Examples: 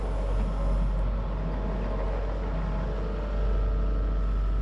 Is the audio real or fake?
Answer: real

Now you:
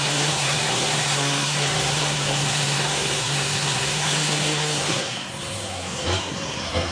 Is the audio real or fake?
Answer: fake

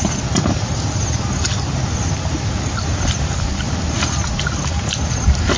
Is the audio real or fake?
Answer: real